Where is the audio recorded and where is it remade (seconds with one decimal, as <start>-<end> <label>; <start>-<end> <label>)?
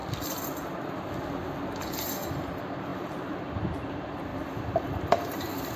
0.0-1.8 recorded; 1.8-5.8 remade